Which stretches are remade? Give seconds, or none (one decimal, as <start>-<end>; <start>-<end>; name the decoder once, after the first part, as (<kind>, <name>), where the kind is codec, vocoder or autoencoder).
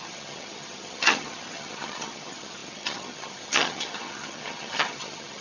0.0-5.4 (vocoder, HiFi-GAN)